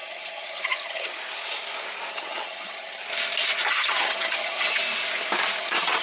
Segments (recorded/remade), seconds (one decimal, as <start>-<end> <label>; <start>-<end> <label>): 0.0-1.1 remade; 1.1-2.1 recorded; 2.1-3.0 remade; 3.0-3.7 recorded; 3.7-4.8 remade; 4.8-5.6 recorded; 5.6-6.0 remade